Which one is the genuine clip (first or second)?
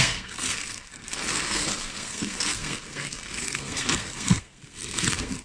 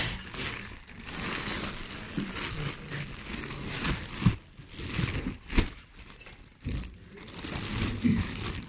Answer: second